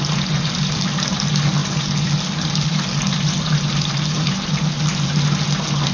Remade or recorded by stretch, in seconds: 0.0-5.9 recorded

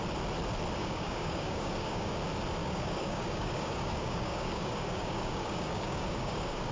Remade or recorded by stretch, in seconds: 0.0-0.8 recorded; 0.8-2.1 remade; 2.1-2.6 recorded; 2.6-6.7 remade